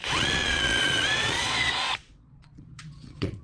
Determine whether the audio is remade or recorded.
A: remade